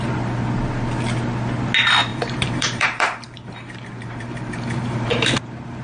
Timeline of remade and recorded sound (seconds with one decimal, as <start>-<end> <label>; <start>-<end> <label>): 0.0-2.1 recorded; 2.1-5.8 remade